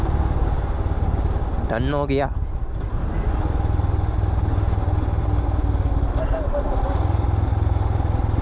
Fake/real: real